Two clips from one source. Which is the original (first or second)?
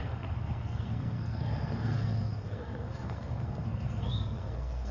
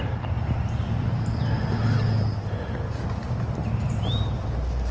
second